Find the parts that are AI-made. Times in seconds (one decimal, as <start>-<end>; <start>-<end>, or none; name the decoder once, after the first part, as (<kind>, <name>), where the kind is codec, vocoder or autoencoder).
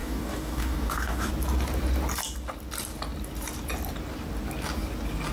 0.0-1.3 (codec, DAC)